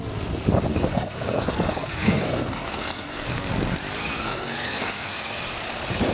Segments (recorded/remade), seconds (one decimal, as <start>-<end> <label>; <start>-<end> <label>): 0.0-0.7 recorded; 0.7-3.5 remade; 3.5-4.0 recorded; 4.0-5.4 remade; 5.4-6.1 recorded